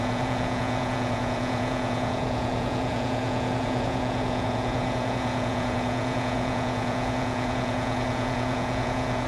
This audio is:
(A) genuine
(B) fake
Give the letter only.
B